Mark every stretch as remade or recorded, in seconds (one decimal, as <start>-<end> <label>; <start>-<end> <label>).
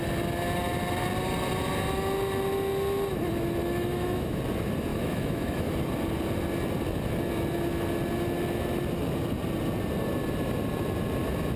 0.0-3.6 recorded; 3.6-4.4 remade; 4.4-4.9 recorded; 4.9-5.7 remade; 5.7-11.6 recorded